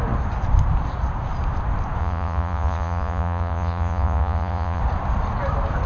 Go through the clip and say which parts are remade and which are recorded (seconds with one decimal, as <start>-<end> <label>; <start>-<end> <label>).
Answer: 0.0-2.0 recorded; 2.0-4.8 remade; 4.8-5.9 recorded